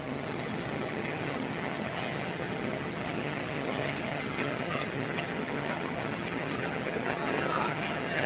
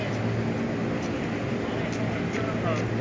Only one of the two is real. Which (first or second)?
second